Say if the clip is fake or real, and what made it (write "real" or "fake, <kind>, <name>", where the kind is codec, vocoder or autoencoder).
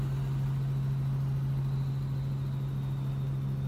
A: real